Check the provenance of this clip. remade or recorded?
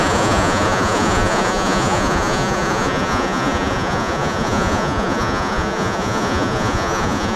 remade